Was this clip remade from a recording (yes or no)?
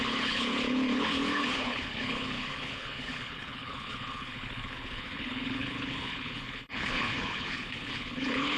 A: yes